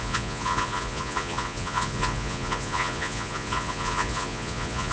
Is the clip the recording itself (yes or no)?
no